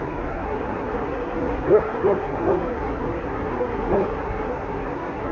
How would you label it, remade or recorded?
remade